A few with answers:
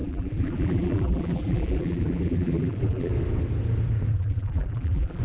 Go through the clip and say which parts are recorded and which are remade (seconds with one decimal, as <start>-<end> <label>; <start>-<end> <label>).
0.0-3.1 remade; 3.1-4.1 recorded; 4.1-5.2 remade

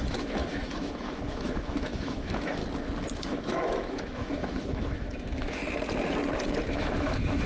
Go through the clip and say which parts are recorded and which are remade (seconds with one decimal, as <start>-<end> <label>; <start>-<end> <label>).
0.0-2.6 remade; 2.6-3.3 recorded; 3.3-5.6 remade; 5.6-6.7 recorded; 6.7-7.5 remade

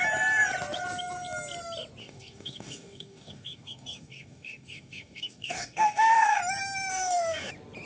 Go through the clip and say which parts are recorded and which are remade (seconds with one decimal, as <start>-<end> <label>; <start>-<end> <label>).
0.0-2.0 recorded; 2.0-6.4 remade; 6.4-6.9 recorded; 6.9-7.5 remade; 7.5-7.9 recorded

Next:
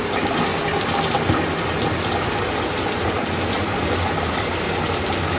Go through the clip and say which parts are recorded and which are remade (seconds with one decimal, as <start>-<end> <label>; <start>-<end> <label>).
0.0-5.4 recorded

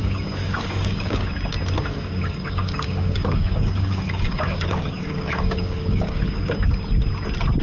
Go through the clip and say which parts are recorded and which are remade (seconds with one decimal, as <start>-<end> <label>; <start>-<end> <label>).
0.0-1.3 remade; 1.3-1.9 recorded; 1.9-6.5 remade; 6.5-7.6 recorded